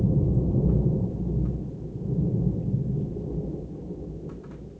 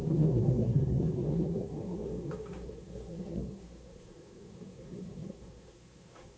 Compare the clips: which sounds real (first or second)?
first